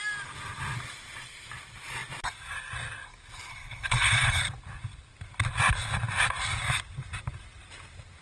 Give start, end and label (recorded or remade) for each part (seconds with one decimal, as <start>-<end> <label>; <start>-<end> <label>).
0.0-3.5 recorded; 3.5-4.4 remade; 4.4-8.2 recorded